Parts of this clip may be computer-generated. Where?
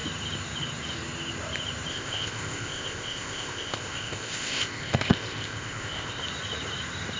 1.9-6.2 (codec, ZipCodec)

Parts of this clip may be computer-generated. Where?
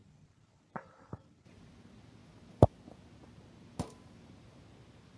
0.0-1.7 (vocoder, BigVGAN v2); 2.2-2.7